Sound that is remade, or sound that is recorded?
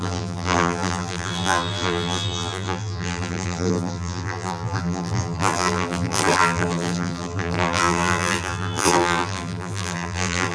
remade